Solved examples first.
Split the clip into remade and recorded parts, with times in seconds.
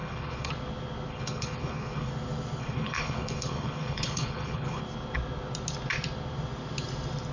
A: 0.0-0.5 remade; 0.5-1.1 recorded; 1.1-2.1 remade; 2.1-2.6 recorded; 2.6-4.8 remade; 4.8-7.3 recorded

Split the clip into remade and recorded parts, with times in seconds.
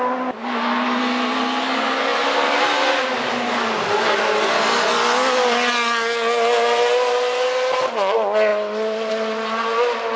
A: 0.0-10.2 recorded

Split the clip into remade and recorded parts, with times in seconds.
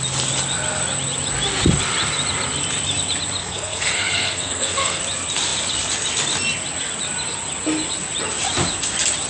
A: 0.0-3.4 recorded; 3.4-5.0 remade; 5.0-9.3 recorded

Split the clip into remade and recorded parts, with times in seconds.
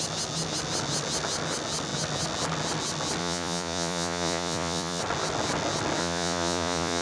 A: 0.0-3.2 recorded; 3.2-5.0 remade; 5.0-6.0 recorded; 6.0-7.0 remade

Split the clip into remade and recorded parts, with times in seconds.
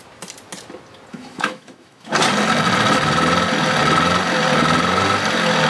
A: 0.0-1.1 recorded; 1.1-2.1 remade; 2.1-5.7 recorded